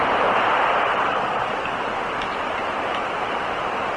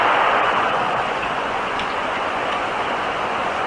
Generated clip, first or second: second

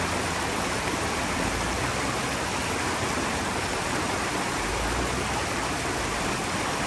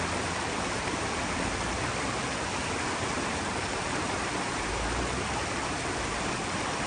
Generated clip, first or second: second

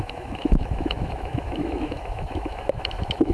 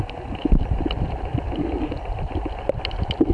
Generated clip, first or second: first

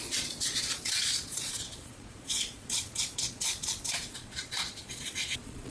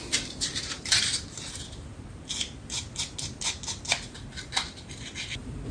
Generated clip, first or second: first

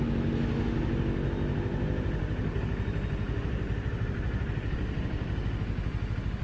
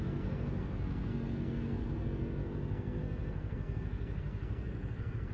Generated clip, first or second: second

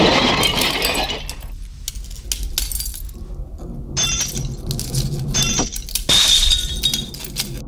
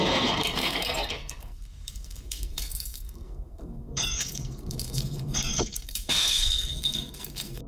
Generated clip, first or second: second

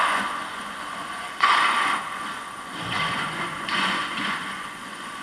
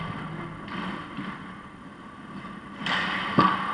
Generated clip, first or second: first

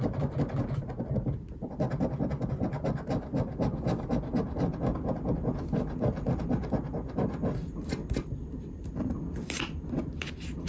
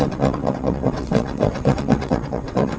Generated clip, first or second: second